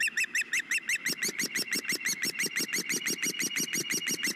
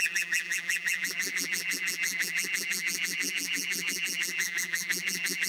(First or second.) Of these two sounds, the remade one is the second